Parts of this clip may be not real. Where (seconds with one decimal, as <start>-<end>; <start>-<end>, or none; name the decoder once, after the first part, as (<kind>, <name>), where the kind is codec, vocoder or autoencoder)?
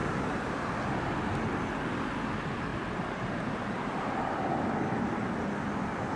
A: 2.7-4.0 (vocoder, BigVGAN v2)